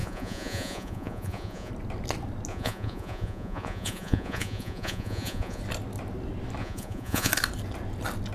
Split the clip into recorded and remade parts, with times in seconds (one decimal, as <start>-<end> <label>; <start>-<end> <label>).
0.0-1.7 remade; 1.7-2.5 recorded; 2.5-5.6 remade; 5.6-6.6 recorded; 6.6-7.3 remade; 7.3-8.3 recorded